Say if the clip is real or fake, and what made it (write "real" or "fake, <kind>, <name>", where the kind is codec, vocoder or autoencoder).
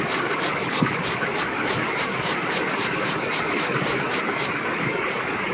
fake, codec, DAC